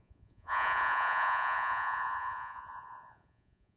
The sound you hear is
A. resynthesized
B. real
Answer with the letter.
A